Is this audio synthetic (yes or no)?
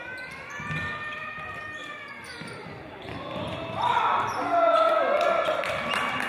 no